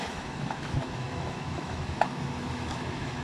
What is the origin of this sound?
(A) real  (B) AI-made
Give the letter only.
B